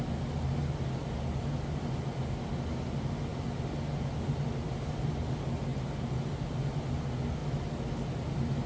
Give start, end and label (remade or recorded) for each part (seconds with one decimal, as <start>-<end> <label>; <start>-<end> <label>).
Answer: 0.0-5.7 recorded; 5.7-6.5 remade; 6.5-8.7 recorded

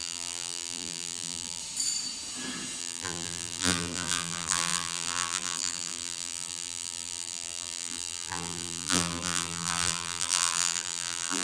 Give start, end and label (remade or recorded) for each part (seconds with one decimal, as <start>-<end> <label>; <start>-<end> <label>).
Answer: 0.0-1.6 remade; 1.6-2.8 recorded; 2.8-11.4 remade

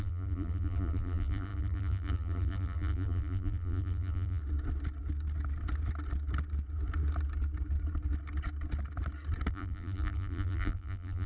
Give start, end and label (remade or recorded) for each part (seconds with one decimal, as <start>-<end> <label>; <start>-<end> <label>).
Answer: 0.0-4.4 remade; 4.4-9.5 recorded; 9.5-11.3 remade